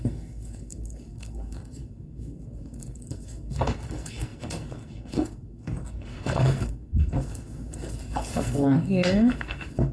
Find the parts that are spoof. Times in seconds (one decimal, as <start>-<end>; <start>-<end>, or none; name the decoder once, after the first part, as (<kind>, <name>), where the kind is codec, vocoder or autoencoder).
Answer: 0.0-9.9 (codec, SNAC)